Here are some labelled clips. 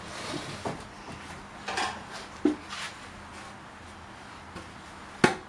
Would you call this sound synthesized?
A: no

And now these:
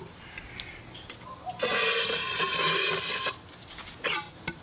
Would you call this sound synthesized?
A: no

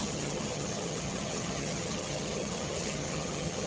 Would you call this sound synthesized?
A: yes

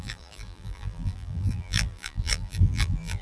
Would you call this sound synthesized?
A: yes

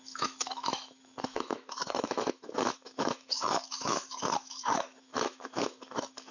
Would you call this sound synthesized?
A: yes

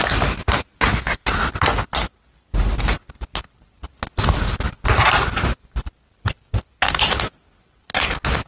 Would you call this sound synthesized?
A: no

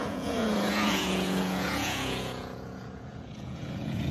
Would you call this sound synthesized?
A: yes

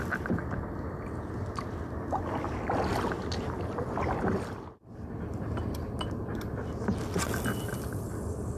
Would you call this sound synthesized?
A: no